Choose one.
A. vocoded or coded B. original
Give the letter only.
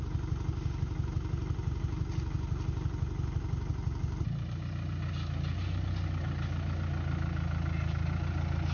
B